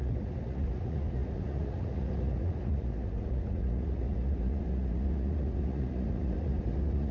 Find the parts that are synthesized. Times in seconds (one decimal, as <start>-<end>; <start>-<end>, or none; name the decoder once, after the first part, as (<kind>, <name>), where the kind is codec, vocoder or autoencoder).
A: 0.0-7.1 (vocoder, Vocos)

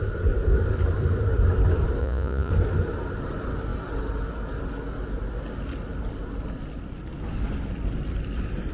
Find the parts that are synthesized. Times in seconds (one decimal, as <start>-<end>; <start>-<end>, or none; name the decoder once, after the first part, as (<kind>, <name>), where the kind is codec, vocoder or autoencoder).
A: 2.0-2.5 (vocoder, Vocos)

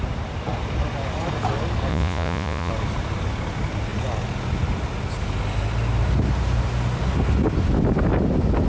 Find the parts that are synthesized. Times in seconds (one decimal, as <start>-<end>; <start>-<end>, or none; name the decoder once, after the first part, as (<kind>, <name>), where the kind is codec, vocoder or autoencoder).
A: 1.9-2.7 (vocoder, Vocos)